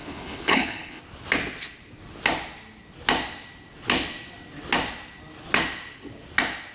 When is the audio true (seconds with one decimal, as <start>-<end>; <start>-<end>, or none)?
1.0-6.7